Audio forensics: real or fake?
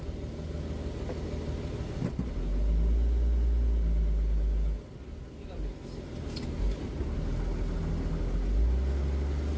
real